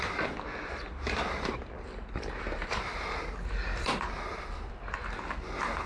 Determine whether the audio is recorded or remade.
recorded